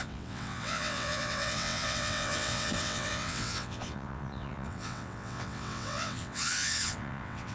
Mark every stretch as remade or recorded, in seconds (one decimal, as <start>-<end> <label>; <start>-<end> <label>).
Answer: 0.0-7.5 remade